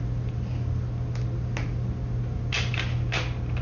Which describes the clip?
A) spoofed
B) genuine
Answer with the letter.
B